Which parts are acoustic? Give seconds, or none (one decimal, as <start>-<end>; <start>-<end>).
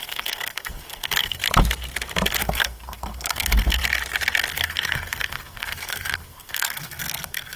1.4-2.4; 3.8-4.5